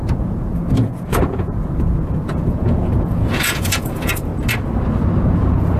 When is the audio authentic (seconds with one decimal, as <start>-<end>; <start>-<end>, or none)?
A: 4.3-5.2